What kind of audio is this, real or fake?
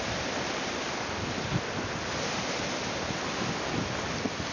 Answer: real